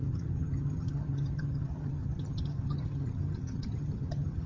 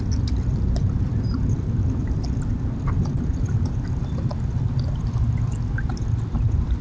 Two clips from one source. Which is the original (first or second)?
second